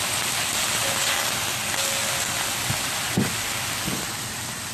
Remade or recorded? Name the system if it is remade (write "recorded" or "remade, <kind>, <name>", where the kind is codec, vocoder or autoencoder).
recorded